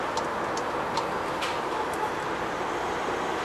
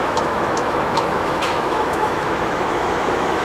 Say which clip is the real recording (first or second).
first